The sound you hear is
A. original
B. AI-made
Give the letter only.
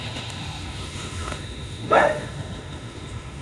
B